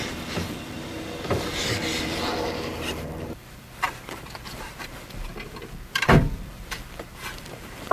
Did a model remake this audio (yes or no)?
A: yes